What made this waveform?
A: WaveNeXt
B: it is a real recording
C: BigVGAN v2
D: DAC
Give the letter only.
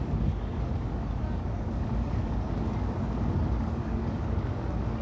D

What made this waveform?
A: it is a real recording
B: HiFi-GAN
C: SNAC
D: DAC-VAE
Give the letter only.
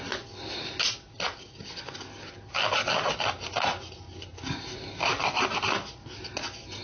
A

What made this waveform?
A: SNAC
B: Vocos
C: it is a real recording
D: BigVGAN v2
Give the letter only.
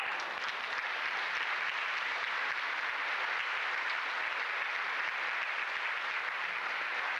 C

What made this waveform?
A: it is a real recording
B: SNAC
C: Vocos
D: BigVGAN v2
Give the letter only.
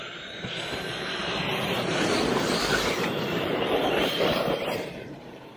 D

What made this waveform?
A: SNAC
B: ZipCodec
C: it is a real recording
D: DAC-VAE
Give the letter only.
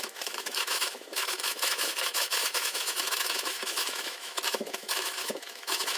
D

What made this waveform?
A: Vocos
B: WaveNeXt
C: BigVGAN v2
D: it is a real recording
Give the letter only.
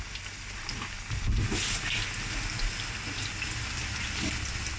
D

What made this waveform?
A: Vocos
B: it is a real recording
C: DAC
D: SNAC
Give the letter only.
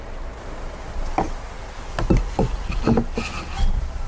B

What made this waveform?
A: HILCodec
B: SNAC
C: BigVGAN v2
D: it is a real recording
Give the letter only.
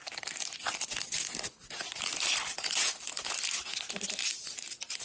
D